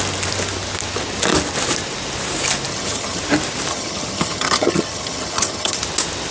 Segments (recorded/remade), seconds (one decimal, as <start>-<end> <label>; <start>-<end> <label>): 0.0-2.7 recorded; 2.7-3.2 remade; 3.2-3.7 recorded; 3.7-5.8 remade; 5.8-6.3 recorded